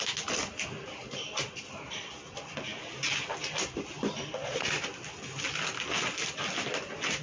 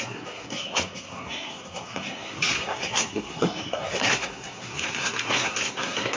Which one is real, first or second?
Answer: first